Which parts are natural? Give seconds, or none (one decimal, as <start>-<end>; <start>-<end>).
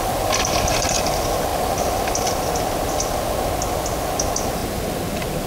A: 0.0-5.5